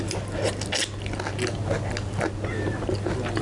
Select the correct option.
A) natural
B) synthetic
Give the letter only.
A